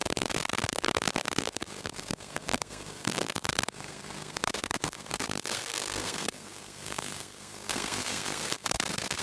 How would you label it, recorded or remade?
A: remade